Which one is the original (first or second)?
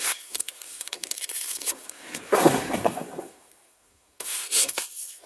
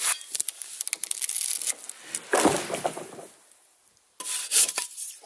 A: second